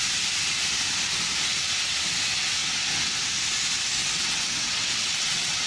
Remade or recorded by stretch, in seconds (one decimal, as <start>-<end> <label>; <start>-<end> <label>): 0.0-4.0 recorded; 4.0-5.7 remade